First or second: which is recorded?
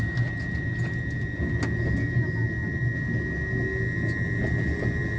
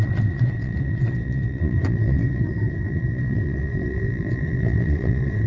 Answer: first